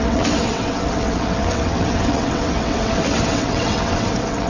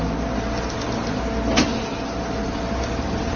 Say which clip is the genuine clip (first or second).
second